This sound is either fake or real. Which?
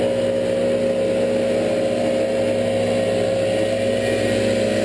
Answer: real